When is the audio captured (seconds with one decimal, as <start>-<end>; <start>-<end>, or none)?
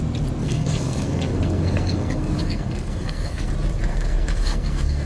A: 0.0-0.4; 3.5-3.9